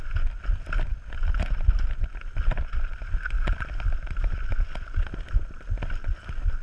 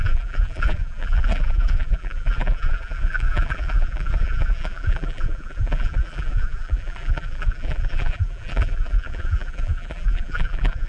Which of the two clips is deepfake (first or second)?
second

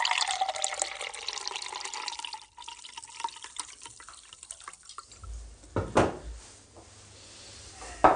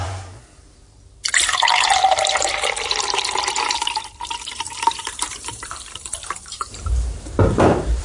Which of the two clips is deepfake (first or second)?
second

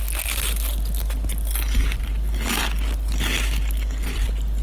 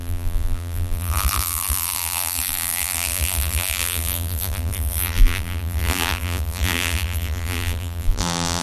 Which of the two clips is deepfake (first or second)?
second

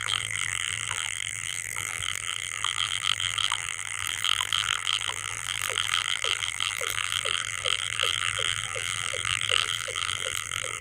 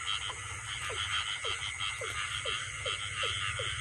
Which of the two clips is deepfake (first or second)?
first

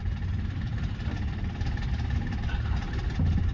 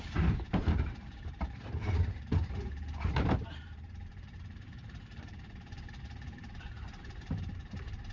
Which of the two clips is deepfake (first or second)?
second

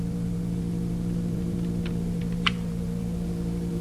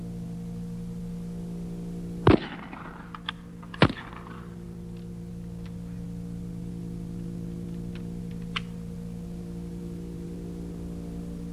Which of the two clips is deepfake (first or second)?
first